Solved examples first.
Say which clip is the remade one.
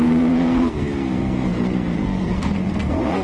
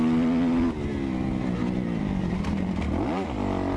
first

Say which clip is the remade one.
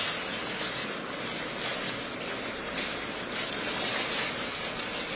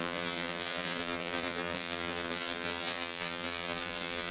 second